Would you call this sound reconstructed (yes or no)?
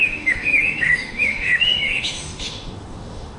yes